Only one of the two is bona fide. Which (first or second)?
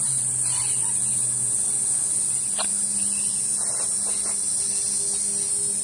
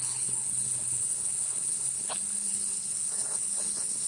first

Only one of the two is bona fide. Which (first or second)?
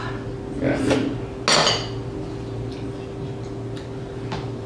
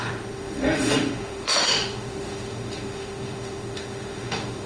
first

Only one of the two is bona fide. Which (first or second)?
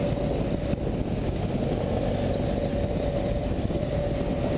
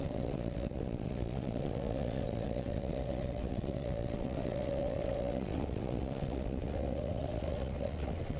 first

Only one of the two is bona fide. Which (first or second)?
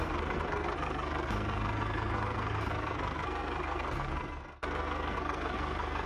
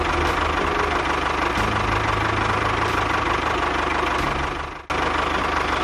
second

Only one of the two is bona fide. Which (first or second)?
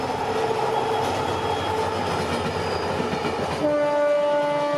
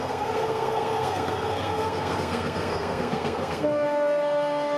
first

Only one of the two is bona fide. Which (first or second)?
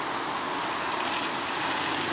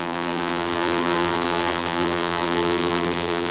first